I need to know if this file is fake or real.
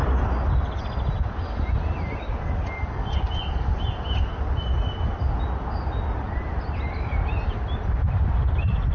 real